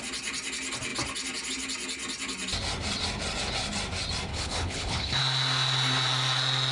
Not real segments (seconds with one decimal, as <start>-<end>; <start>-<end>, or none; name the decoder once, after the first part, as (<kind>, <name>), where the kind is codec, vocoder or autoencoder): 4.3-5.2 (codec, HILCodec)